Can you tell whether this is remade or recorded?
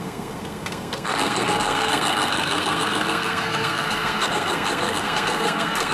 remade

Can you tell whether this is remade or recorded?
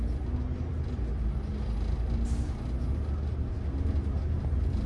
recorded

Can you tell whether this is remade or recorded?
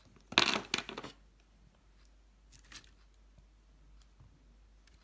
recorded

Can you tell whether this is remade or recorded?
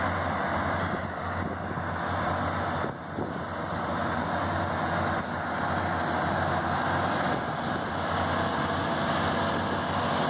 recorded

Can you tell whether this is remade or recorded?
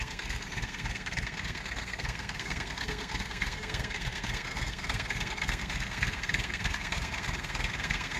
remade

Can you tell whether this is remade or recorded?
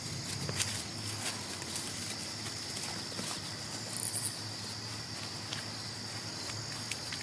recorded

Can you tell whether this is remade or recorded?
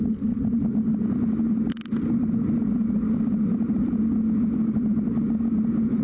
recorded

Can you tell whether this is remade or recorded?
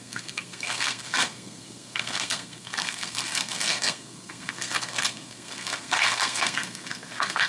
remade